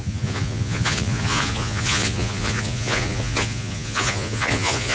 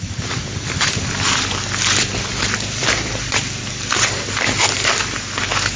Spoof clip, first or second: first